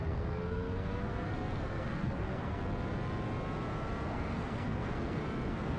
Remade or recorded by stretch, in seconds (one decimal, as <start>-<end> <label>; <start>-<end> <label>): 0.0-2.6 remade; 2.6-4.1 recorded; 4.1-5.8 remade